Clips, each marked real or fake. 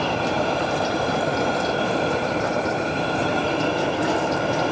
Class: fake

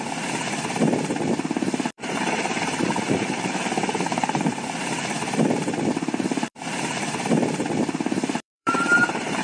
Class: fake